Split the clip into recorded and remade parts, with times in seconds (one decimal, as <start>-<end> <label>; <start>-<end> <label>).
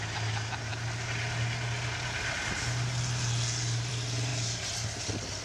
0.0-5.4 recorded